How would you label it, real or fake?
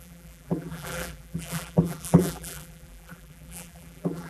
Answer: fake